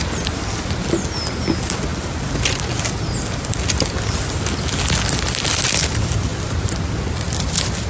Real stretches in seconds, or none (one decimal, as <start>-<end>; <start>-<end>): 0.0-7.9